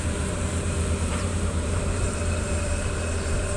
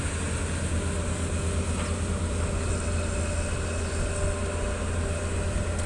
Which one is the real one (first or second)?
second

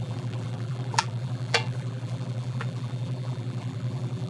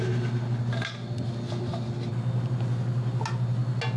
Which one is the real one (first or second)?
second